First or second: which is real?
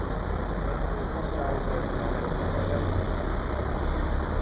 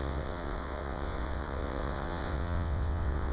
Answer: first